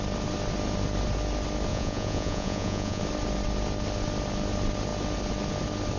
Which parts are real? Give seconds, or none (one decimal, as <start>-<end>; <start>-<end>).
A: 0.0-1.7; 3.0-6.0